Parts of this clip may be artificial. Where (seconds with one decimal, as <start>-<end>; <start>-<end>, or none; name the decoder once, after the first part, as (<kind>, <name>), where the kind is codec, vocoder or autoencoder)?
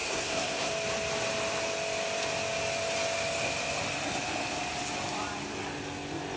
0.0-0.7 (codec, SNAC)